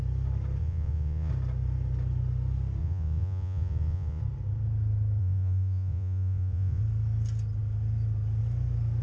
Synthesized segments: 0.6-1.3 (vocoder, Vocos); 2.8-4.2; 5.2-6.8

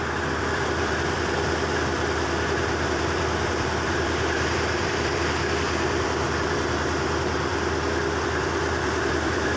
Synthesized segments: 0.0-9.6 (vocoder, BigVGAN v2)

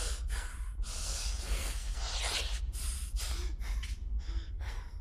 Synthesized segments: 0.0-0.5 (codec, SNAC); 1.0-2.1; 4.2-5.0

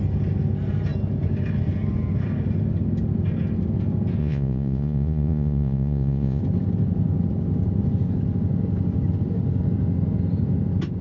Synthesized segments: 4.2-6.4 (vocoder, Vocos)